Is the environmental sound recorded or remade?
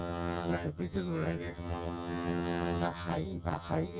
remade